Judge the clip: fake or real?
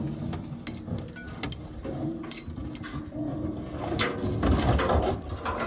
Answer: real